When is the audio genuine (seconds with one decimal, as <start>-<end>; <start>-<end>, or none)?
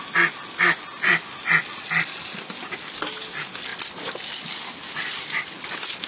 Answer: 0.0-6.1